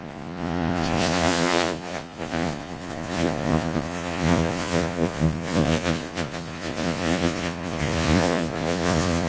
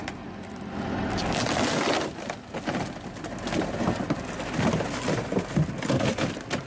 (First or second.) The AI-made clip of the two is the first